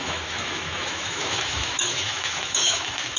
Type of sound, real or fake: fake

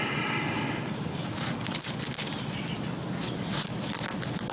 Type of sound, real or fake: real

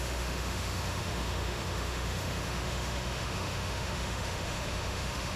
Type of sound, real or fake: fake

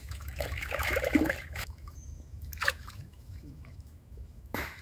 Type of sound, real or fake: fake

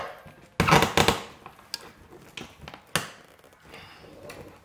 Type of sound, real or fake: real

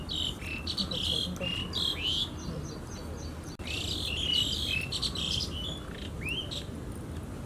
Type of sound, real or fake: real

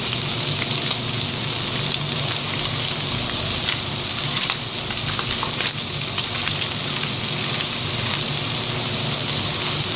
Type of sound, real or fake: real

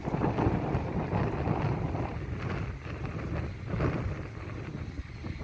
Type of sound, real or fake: real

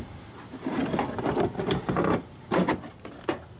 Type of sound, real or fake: real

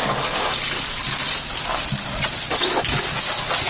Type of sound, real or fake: real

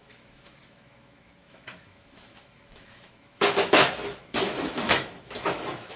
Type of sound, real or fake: fake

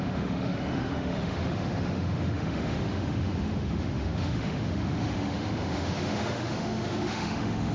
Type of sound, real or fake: fake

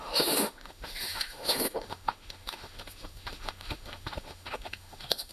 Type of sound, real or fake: fake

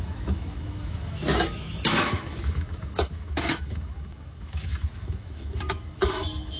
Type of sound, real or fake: fake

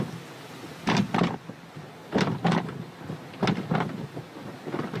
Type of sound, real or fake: real